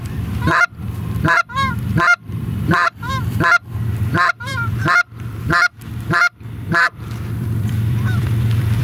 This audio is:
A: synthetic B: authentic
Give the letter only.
A